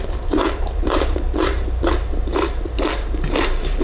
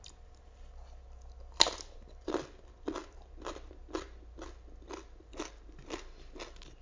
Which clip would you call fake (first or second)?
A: first